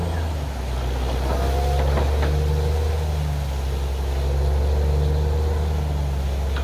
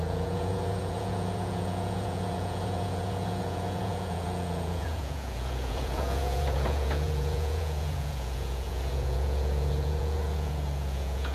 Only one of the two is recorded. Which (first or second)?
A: first